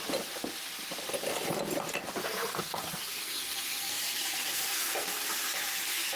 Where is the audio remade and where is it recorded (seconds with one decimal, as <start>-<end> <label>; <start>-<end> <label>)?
0.0-2.2 recorded; 2.2-6.2 remade